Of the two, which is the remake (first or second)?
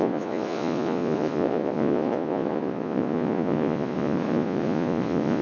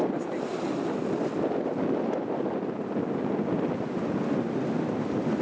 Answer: first